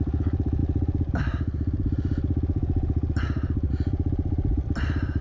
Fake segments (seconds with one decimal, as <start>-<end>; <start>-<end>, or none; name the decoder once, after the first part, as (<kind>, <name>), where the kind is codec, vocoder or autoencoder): none